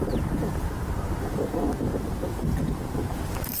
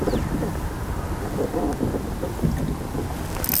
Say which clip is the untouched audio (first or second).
second